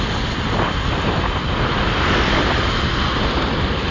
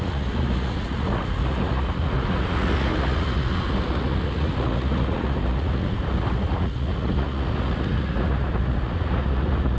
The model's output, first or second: second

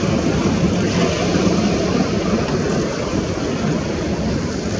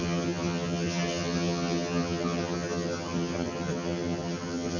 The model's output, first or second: second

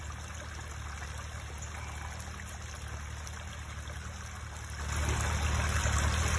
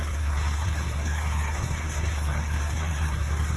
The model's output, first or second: second